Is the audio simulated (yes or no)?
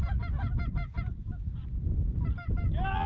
no